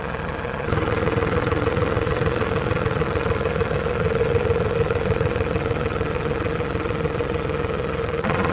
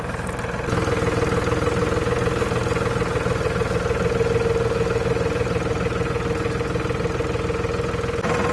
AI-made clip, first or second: first